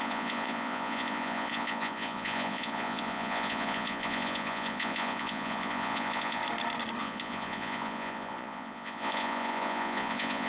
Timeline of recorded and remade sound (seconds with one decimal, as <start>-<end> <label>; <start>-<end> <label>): 0.0-6.4 remade; 6.4-7.0 recorded; 7.0-10.5 remade